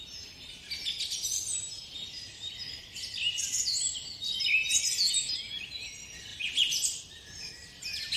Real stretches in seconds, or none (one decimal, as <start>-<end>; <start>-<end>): 0.0-6.3; 7.0-8.2

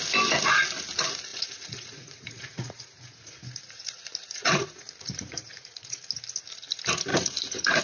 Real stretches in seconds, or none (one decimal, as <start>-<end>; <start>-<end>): 0.0-1.3; 6.0-7.1

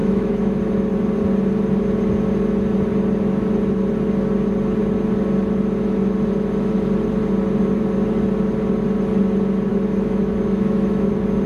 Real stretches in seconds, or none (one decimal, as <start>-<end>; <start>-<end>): 0.6-9.7; 11.1-11.5

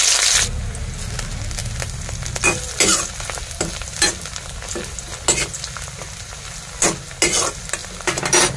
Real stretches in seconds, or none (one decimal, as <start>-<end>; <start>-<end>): 0.0-2.9; 4.5-8.6

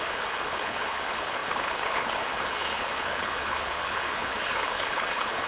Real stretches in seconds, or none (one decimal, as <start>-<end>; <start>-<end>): none

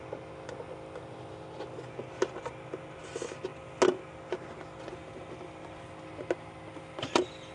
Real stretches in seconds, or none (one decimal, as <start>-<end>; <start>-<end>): 0.0-7.5

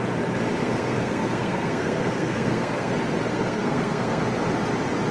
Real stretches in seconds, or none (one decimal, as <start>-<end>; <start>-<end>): 0.0-0.6; 2.9-3.3; 4.2-5.1